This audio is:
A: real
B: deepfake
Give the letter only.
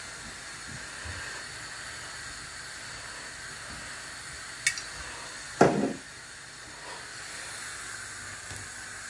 A